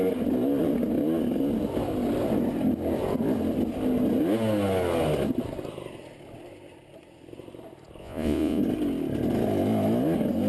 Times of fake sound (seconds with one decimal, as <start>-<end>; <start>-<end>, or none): 8.0-8.6